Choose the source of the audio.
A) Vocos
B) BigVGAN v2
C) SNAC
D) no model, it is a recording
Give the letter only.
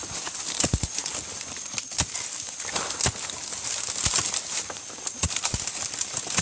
D